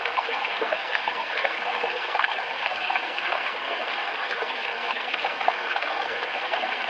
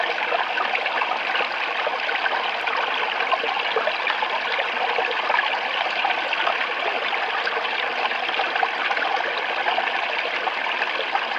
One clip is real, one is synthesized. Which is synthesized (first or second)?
first